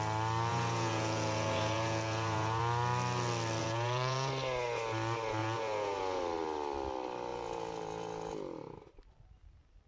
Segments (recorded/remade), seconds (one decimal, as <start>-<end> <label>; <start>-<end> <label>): 0.0-0.5 recorded; 0.5-2.6 remade; 2.6-3.6 recorded; 3.6-4.3 remade; 4.3-5.4 recorded; 5.4-6.2 remade; 6.2-7.3 recorded; 7.3-8.3 remade; 8.3-9.9 recorded